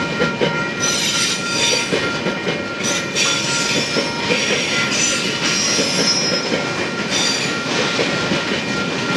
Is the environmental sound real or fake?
real